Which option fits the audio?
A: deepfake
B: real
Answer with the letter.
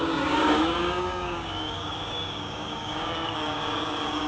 A